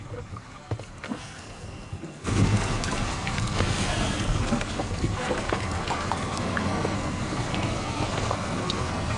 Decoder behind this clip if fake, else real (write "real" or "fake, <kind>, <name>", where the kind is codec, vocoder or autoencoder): fake, codec, SNAC